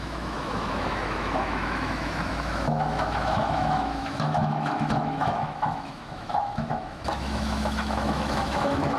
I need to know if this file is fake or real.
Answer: fake